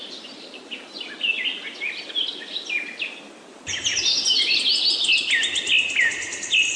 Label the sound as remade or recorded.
recorded